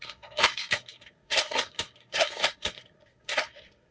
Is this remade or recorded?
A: remade